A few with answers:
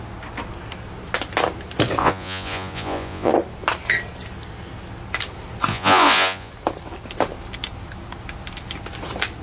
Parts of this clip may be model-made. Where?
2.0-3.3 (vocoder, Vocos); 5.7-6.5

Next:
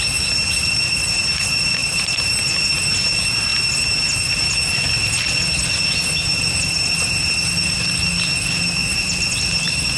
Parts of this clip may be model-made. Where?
1.8-2.4 (vocoder, BigVGAN v2); 6.3-8.0; 8.8-10.0

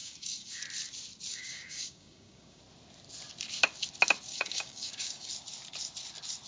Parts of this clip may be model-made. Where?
0.0-0.6 (codec, DAC); 1.3-2.6; 4.3-5.3

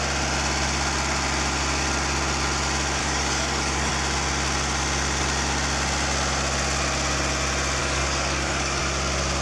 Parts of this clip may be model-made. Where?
3.0-3.9 (codec, DAC); 7.8-8.8